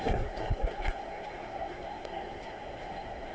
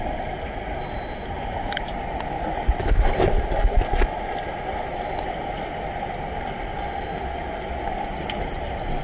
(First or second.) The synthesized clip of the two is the first